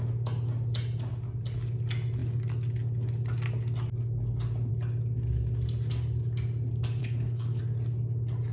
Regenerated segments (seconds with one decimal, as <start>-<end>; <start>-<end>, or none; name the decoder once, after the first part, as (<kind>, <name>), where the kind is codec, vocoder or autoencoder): 7.0-7.6 (codec, HILCodec)